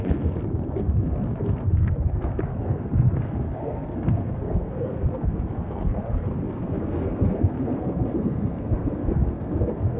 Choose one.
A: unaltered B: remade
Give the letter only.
B